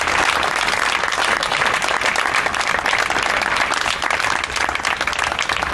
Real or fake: real